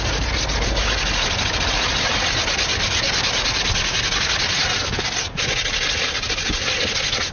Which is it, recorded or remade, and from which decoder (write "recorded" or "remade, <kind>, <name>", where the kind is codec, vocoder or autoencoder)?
recorded